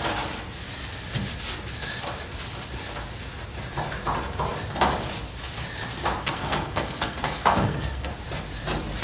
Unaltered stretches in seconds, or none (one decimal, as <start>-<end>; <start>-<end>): 0.0-6.2; 8.1-9.0